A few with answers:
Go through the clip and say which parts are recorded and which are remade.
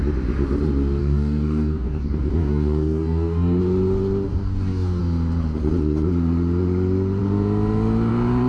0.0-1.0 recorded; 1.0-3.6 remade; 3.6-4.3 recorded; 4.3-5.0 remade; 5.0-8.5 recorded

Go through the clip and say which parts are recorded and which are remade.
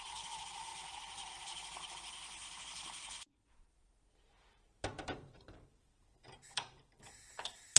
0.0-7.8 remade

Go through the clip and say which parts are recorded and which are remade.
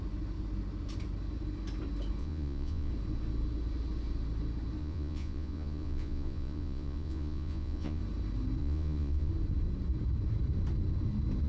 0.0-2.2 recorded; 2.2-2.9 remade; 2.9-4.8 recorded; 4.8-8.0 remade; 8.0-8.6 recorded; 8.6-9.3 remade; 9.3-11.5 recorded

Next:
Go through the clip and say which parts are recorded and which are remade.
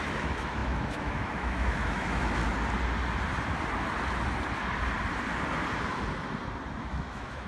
0.0-2.4 remade; 2.4-6.8 recorded; 6.8-7.5 remade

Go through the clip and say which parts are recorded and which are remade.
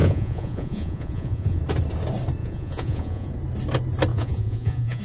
0.0-1.6 remade; 1.6-2.4 recorded; 2.4-3.3 remade; 3.3-4.1 recorded; 4.1-5.0 remade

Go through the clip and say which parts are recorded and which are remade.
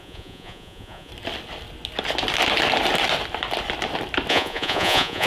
0.0-1.1 remade; 1.1-4.3 recorded; 4.3-5.3 remade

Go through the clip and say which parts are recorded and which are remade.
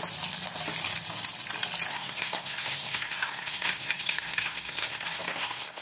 0.0-1.9 recorded; 1.9-5.8 remade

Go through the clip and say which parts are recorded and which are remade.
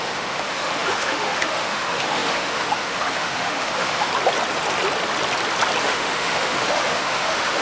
0.0-4.1 remade; 4.1-5.8 recorded; 5.8-7.6 remade